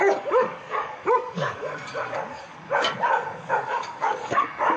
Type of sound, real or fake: fake